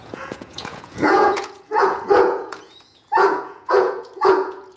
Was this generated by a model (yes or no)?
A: yes